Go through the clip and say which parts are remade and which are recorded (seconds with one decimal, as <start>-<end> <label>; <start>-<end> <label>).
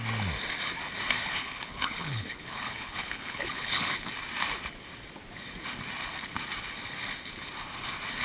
0.0-1.2 recorded; 1.2-4.1 remade; 4.1-8.2 recorded